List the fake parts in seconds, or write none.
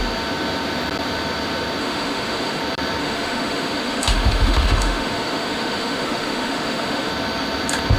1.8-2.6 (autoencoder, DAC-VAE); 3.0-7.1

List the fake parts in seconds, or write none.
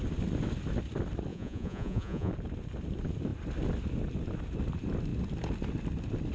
1.3-2.3 (vocoder, Vocos)